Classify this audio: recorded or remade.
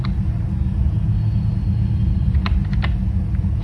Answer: recorded